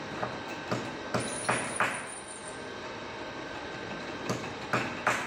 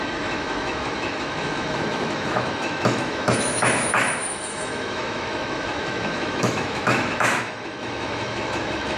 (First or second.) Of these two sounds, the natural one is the first